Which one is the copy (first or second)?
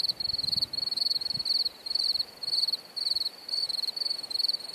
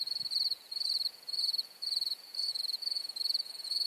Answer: second